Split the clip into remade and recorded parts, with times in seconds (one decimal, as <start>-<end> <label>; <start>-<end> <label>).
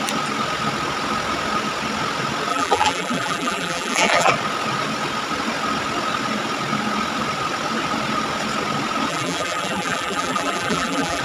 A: 0.0-2.5 recorded; 2.5-4.3 remade; 4.3-9.1 recorded; 9.1-11.2 remade